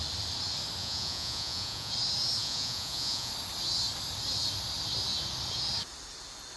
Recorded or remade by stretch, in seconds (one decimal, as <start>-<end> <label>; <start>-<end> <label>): 0.0-0.8 recorded; 0.8-1.9 remade; 1.9-2.4 recorded; 2.4-3.3 remade; 3.3-6.6 recorded